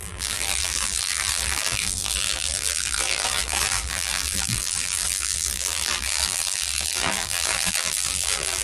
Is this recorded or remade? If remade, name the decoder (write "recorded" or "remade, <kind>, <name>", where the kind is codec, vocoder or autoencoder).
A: remade, vocoder, BigVGAN v2